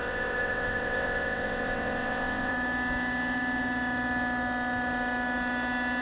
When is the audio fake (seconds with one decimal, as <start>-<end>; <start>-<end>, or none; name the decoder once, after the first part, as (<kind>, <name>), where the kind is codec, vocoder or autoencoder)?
0.0-2.5 (vocoder, WaveNeXt)